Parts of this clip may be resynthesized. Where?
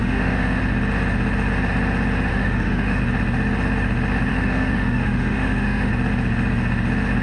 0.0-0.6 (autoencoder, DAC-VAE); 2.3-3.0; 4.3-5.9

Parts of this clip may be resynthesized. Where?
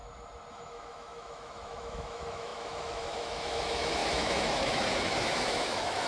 0.5-6.1 (autoencoder, DAC-VAE)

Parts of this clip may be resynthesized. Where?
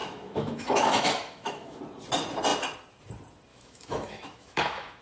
0.0-1.8 (autoencoder, DAC-VAE); 3.5-5.0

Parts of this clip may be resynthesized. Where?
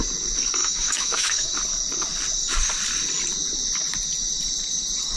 0.6-1.6 (autoencoder, DAC-VAE)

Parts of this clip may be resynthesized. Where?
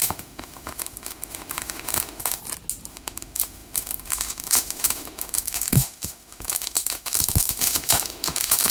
0.0-2.4 (autoencoder, DAC-VAE); 2.9-8.7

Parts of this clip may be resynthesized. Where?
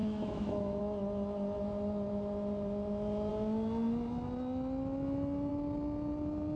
0.0-0.8 (autoencoder, DAC-VAE)